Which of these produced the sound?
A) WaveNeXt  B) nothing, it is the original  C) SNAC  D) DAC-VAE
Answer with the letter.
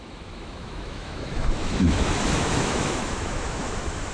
D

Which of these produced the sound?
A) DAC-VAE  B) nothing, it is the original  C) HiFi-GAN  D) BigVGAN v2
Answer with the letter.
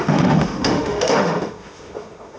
A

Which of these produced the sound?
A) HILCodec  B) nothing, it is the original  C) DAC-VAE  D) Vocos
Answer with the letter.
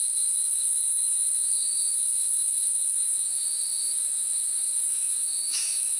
C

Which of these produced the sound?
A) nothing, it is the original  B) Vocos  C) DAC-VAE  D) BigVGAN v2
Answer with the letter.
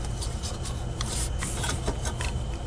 A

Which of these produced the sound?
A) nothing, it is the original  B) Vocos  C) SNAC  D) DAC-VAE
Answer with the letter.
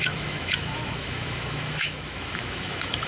D